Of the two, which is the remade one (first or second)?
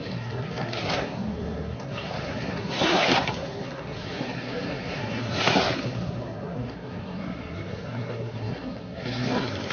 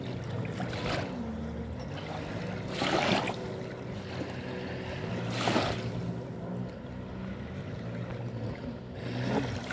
first